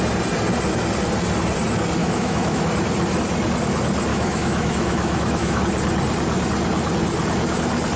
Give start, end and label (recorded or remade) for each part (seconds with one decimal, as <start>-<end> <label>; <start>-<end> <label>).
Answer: 0.0-2.0 recorded; 2.0-2.6 remade; 2.6-4.1 recorded; 4.1-5.6 remade; 5.6-8.0 recorded